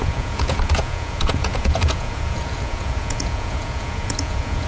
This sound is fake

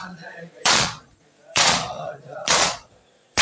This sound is fake